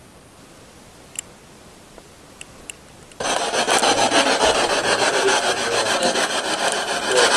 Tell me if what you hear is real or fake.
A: fake